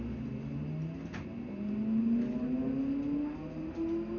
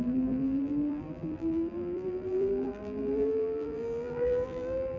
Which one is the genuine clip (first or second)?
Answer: first